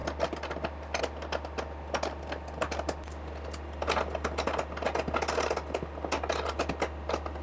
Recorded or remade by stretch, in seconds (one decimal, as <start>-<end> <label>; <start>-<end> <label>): 0.0-7.4 recorded